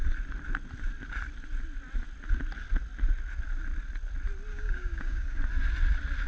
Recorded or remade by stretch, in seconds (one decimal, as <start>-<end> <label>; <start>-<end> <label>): 0.0-4.5 recorded; 4.5-5.4 remade; 5.4-6.3 recorded